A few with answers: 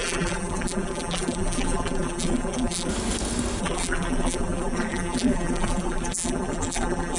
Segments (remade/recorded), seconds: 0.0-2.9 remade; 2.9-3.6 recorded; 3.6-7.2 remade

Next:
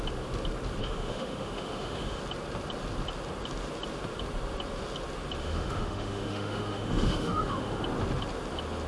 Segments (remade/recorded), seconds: 0.0-0.8 recorded; 0.8-2.2 remade; 2.2-5.4 recorded; 5.4-7.8 remade; 7.8-8.9 recorded

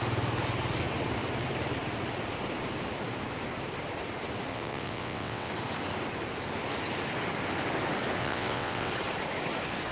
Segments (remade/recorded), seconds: 0.0-4.5 recorded; 4.5-5.5 remade; 5.5-8.2 recorded; 8.2-8.9 remade; 8.9-9.9 recorded

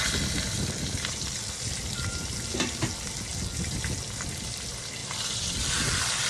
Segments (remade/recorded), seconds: 0.0-3.3 remade; 3.3-4.3 recorded; 4.3-6.3 remade